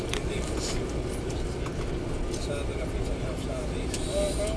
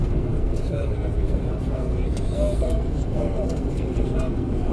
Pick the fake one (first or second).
second